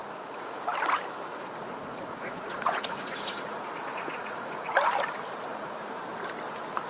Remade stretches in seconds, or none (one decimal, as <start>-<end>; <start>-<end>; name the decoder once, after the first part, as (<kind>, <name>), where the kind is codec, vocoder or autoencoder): 0.0-0.6 (vocoder, Vocos); 1.3-4.7; 5.5-6.0